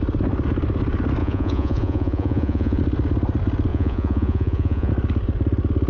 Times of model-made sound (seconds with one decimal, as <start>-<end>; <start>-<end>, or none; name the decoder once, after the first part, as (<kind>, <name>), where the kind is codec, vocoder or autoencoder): 1.2-2.8 (vocoder, Vocos); 3.7-4.9